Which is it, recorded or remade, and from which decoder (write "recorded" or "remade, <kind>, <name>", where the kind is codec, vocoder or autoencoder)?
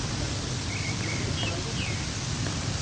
recorded